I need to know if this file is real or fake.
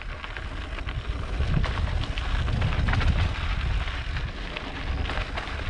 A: real